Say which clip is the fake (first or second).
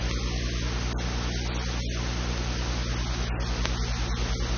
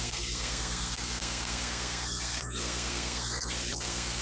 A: second